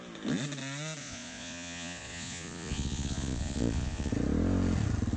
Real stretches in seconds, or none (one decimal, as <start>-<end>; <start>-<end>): 0.0-1.0; 4.1-5.2